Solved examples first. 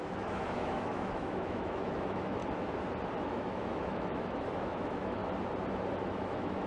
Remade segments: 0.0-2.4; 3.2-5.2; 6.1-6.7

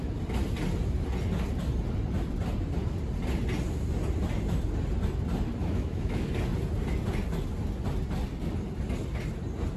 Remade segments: 5.6-6.3

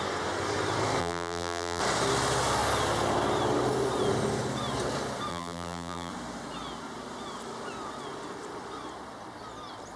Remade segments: 1.0-1.8; 5.3-6.1

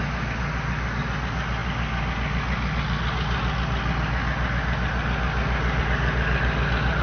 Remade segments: none

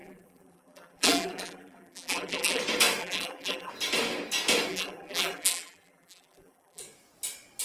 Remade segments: 0.0-2.6; 3.0-3.7; 4.7-6.8

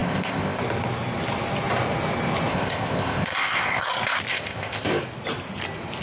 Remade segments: 0.0-0.6; 2.5-3.9; 4.3-5.0

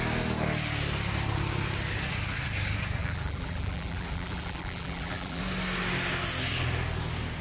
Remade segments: 3.0-5.4